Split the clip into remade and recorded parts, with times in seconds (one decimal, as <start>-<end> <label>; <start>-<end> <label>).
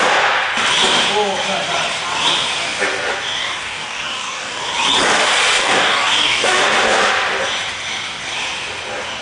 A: 0.0-3.4 recorded; 3.4-4.6 remade; 4.6-5.6 recorded; 5.6-6.6 remade; 6.6-9.2 recorded